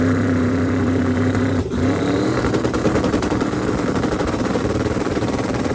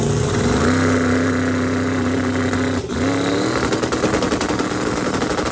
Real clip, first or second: second